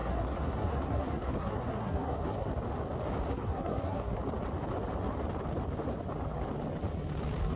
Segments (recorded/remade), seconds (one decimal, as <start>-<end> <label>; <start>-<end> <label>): 0.0-2.5 remade; 2.5-3.3 recorded; 3.3-4.2 remade; 4.2-7.6 recorded